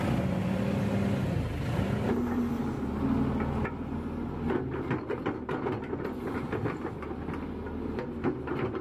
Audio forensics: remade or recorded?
recorded